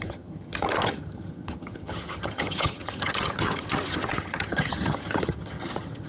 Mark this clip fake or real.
fake